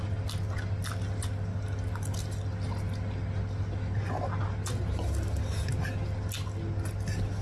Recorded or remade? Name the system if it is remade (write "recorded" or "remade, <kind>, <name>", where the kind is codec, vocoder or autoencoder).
recorded